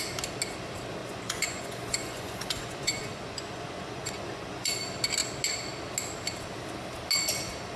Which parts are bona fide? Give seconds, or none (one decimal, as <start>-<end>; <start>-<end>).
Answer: 0.0-1.0; 4.7-7.8